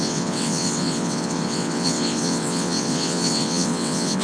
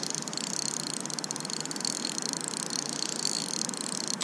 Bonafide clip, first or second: second